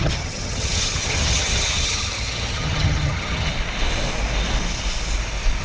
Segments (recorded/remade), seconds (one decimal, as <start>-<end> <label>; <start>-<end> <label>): 0.0-3.5 remade; 3.5-5.6 recorded